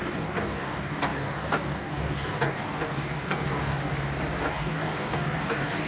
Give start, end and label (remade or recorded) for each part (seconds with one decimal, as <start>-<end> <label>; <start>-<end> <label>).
0.0-3.9 remade; 3.9-4.5 recorded; 4.5-5.9 remade